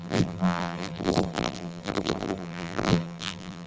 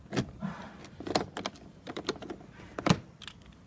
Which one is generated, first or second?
first